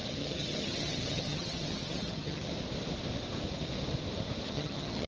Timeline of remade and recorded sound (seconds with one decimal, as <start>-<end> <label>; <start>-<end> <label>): 0.0-2.5 remade; 2.5-4.5 recorded; 4.5-5.1 remade